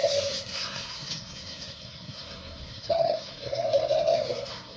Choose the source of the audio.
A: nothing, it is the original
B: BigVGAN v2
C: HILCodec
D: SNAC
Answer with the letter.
D